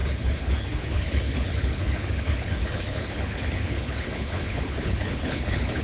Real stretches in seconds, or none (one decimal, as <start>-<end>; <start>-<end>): none